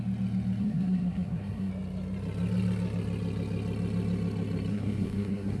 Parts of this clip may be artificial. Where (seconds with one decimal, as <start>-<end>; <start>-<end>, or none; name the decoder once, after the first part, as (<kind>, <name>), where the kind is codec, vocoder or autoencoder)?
0.6-1.7 (codec, SNAC); 4.7-5.6